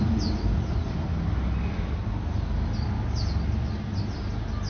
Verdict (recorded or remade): recorded